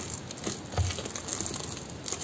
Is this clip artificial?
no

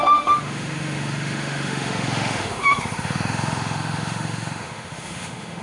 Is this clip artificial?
yes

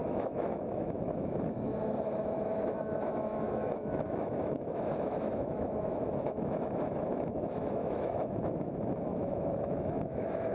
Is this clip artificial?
yes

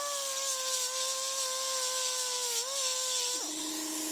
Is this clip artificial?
no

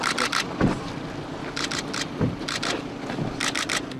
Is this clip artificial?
no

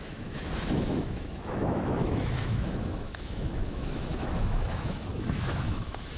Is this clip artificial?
yes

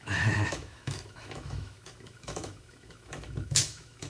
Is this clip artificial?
yes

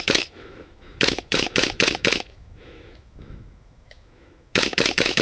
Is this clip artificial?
yes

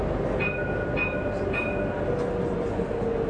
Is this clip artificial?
no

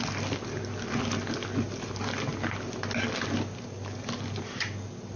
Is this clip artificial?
no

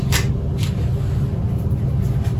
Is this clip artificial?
no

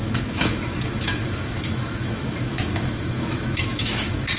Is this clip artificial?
yes